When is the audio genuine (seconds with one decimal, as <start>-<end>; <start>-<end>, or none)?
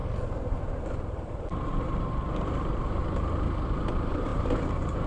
0.0-0.6